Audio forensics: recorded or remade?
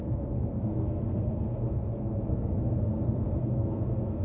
remade